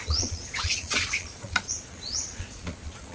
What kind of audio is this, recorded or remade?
remade